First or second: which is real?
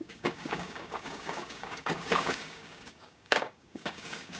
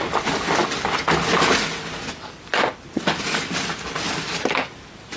second